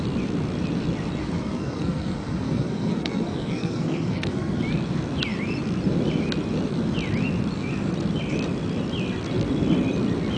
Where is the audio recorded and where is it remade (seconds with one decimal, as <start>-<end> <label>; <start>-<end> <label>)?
0.0-1.2 recorded; 1.2-4.6 remade; 4.6-10.4 recorded